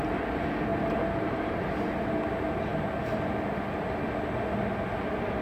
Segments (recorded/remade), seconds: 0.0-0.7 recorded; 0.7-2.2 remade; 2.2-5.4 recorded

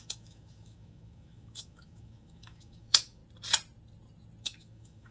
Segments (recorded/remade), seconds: 0.0-3.2 remade; 3.2-4.4 recorded; 4.4-5.1 remade

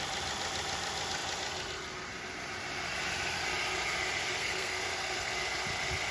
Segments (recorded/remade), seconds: 0.0-4.4 recorded; 4.4-5.3 remade; 5.3-6.1 recorded

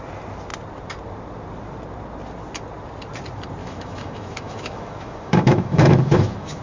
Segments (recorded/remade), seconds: 0.0-3.6 recorded; 3.6-6.6 remade

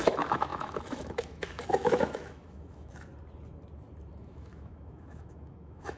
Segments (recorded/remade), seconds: 0.0-3.1 remade; 3.1-4.2 recorded; 4.2-6.0 remade

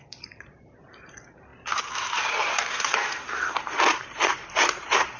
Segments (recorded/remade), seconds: 0.0-1.5 remade; 1.5-2.5 recorded; 2.5-5.2 remade